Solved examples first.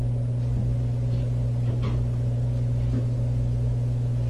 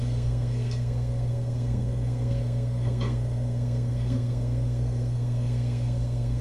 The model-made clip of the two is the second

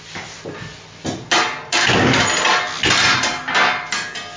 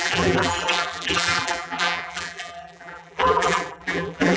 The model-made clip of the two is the second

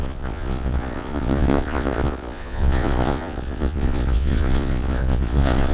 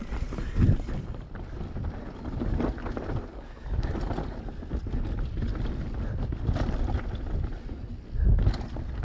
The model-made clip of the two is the first